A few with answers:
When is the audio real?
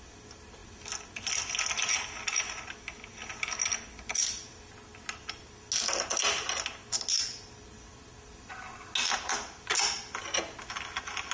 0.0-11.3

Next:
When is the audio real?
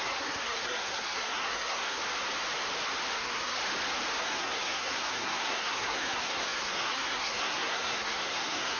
2.0-3.1; 3.6-4.2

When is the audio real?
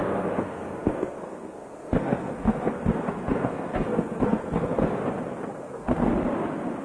5.0-5.5; 6.1-6.8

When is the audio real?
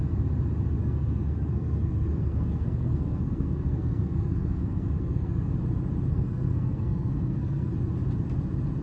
0.0-0.8; 5.5-6.1; 7.7-8.8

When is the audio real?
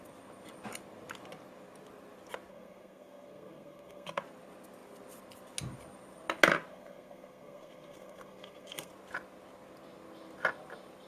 0.0-2.5; 4.2-6.7; 8.9-11.1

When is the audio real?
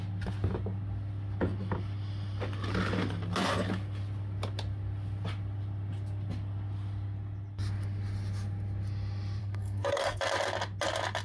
0.0-9.4; 10.2-11.2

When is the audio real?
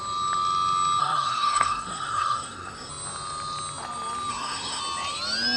0.0-1.0; 2.9-4.3; 4.8-5.6